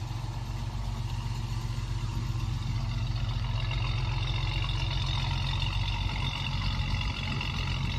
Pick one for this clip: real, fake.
real